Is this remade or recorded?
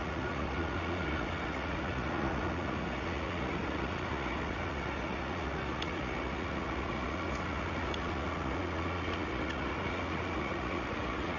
remade